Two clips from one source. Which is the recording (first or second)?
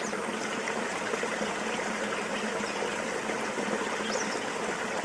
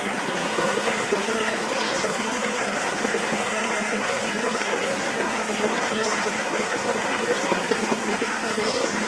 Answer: first